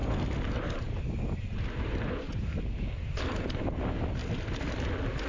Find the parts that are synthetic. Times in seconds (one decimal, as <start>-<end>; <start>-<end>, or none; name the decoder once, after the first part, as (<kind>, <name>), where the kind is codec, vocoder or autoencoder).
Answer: none